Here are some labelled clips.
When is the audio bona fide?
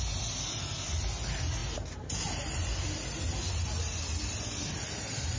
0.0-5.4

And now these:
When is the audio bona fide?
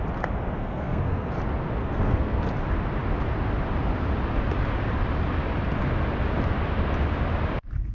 0.0-0.6; 1.3-1.8; 2.4-7.9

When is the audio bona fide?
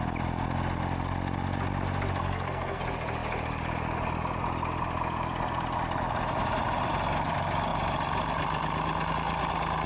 0.0-2.2; 2.8-9.9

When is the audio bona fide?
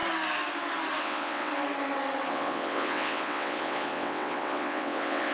0.0-1.0; 1.5-2.3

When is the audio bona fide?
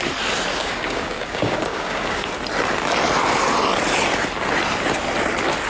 0.0-0.5; 2.3-5.7